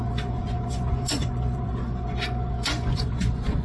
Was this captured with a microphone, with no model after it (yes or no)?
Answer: no